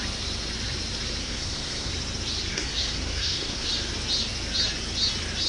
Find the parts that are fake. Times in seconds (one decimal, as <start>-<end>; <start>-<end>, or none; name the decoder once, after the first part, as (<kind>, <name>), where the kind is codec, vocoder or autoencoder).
1.2-1.9 (codec, SNAC); 2.5-3.7